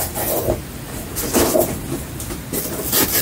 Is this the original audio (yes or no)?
yes